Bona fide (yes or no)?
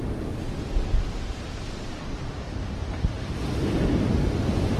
yes